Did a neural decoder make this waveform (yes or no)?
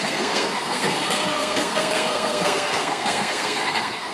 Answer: yes